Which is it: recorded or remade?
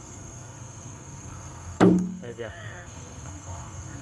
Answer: remade